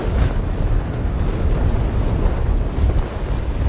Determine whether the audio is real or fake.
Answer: real